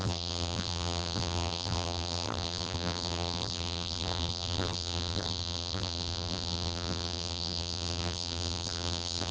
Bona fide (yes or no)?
no